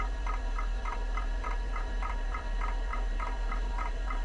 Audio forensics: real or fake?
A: fake